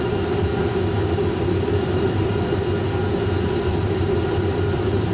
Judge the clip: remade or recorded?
recorded